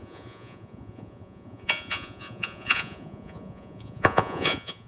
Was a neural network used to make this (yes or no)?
yes